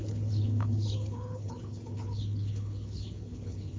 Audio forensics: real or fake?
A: fake